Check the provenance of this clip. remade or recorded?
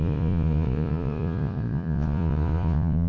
remade